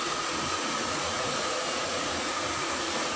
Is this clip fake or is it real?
fake